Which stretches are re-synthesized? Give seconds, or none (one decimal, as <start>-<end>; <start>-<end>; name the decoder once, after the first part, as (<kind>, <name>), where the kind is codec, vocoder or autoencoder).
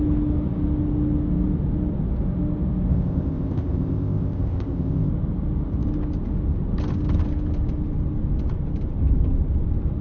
2.9-5.1 (codec, ZipCodec)